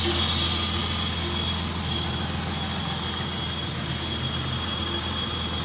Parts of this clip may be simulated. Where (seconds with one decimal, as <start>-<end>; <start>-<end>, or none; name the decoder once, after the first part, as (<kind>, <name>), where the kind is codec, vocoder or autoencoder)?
none